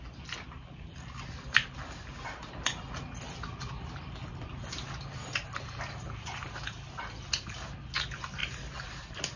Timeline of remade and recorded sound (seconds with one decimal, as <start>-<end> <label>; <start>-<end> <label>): 0.0-9.4 recorded